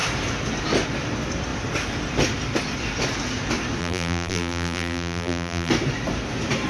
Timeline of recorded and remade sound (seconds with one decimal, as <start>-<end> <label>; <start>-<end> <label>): 0.0-3.8 recorded; 3.8-5.7 remade; 5.7-6.7 recorded